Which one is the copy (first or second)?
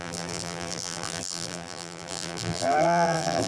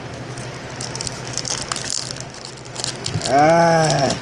first